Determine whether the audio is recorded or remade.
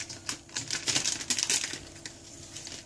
recorded